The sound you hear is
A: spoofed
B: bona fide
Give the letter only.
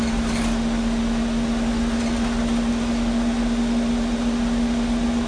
B